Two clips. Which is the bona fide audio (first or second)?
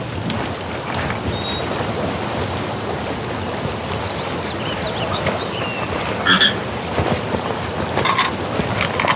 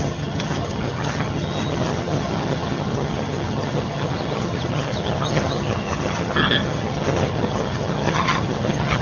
first